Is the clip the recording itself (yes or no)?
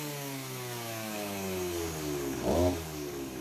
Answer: no